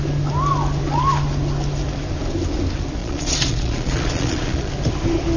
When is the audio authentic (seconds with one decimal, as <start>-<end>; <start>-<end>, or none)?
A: 0.0-3.0; 4.7-5.4